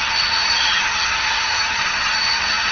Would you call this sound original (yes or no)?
no